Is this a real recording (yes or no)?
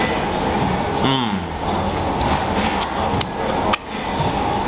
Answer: yes